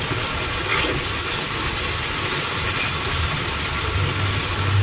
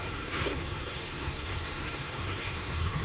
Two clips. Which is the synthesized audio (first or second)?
second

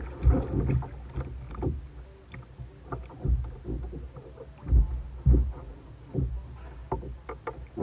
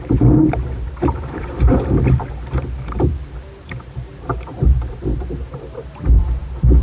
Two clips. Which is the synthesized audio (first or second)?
second